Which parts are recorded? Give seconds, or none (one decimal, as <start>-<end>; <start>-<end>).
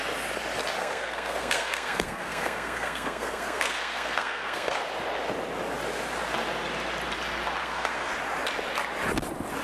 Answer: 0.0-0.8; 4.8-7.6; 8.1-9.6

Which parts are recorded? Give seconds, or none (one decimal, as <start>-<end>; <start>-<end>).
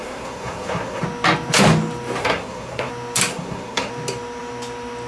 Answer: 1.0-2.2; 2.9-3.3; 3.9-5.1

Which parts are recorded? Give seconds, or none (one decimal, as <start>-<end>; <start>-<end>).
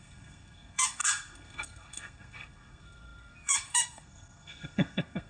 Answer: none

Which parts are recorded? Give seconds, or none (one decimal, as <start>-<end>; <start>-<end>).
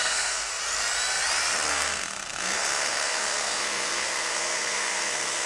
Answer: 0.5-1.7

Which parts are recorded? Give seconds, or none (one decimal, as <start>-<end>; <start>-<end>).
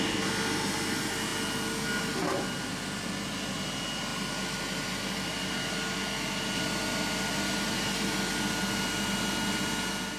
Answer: 0.0-10.2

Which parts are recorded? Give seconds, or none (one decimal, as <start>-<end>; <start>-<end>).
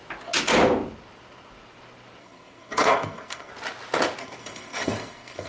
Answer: 0.0-2.2; 3.5-4.2